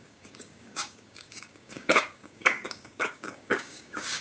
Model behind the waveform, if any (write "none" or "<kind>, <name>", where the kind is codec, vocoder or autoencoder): codec, DAC